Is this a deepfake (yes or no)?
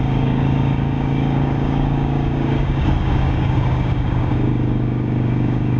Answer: yes